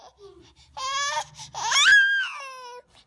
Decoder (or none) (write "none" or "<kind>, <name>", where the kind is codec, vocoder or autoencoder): none